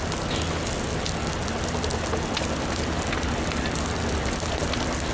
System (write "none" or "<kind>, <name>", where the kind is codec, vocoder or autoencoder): none